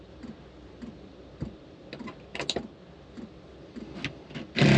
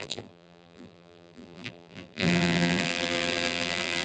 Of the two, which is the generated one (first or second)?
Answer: second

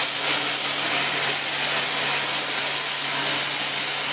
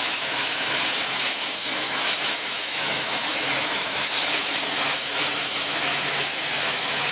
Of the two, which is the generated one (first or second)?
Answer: second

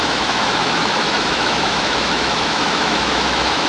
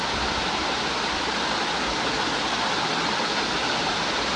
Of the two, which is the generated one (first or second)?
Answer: first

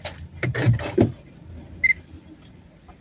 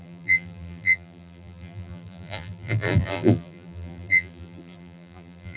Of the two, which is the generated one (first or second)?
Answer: second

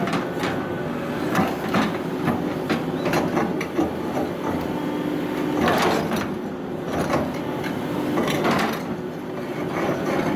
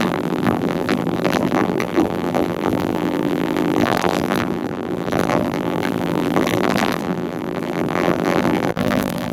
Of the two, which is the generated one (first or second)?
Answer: second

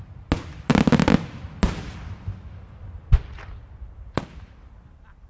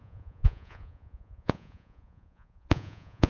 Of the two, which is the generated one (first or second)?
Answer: second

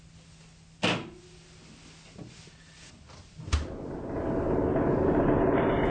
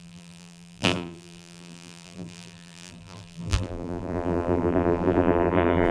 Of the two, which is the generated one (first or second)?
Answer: second